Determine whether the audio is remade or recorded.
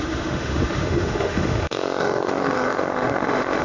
remade